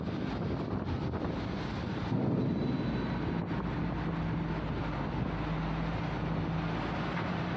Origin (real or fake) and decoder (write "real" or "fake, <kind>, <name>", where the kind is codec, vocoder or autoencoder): real